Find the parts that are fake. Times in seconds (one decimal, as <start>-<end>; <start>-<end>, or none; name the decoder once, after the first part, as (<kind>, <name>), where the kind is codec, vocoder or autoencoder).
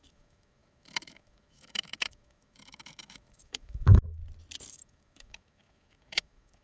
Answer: 0.0-4.2 (autoencoder, DAC-VAE); 4.7-6.6